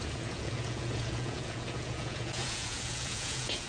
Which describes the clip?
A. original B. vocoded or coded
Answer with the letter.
B